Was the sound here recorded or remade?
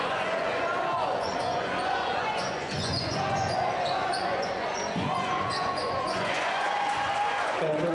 remade